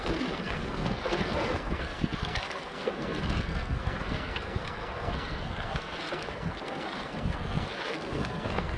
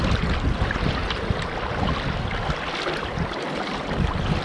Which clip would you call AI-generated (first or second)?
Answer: first